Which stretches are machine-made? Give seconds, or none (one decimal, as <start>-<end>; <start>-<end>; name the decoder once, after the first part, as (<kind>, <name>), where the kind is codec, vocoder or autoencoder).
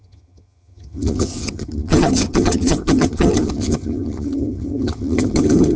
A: 0.0-5.8 (vocoder, HiFi-GAN)